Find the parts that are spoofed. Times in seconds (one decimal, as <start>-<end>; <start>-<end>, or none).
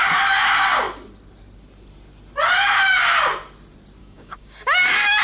4.0-5.2